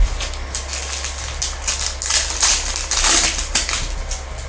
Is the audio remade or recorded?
recorded